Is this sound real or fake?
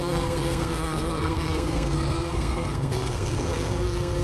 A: fake